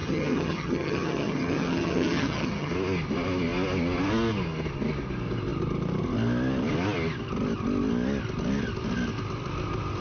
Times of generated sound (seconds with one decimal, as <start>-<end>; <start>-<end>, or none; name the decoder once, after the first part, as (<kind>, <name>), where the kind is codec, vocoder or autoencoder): 0.0-2.7 (vocoder, HiFi-GAN)